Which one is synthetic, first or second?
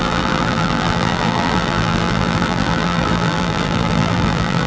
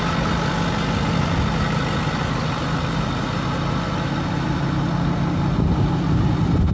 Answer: first